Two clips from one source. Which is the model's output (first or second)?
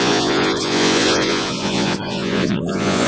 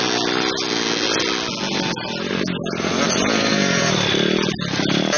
first